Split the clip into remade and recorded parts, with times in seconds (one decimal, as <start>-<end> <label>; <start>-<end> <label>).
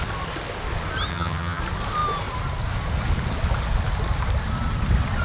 0.0-1.1 recorded; 1.1-1.6 remade; 1.6-5.2 recorded